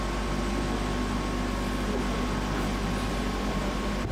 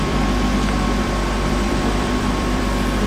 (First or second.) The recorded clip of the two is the first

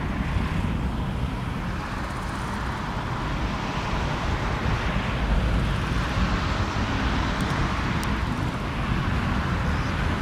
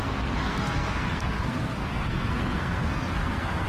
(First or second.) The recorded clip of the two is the first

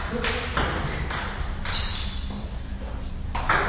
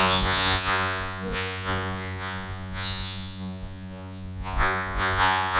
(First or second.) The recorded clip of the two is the first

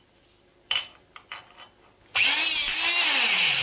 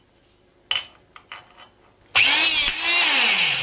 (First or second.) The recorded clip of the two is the second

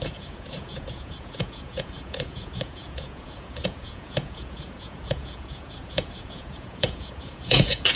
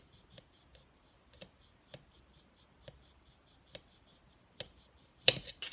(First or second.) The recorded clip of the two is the second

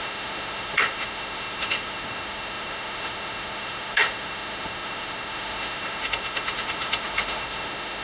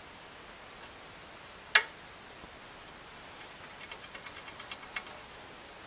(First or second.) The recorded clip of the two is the second